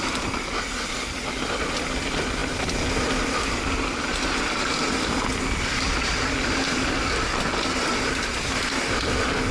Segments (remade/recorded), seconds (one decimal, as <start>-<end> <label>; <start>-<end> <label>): 0.0-9.5 recorded